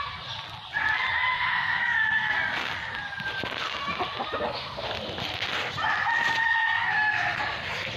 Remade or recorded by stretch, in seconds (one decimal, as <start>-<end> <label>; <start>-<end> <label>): 0.0-1.3 recorded; 1.3-2.3 remade; 2.3-4.4 recorded; 4.4-4.9 remade; 4.9-6.4 recorded; 6.4-7.4 remade; 7.4-8.0 recorded